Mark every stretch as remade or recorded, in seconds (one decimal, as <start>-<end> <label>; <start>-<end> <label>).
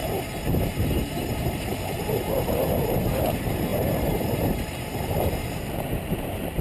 0.0-0.6 recorded; 0.6-1.7 remade; 1.7-2.3 recorded; 2.3-6.6 remade